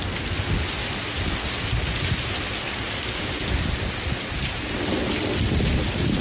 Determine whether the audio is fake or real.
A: real